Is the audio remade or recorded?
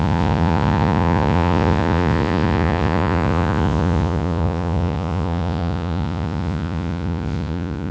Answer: remade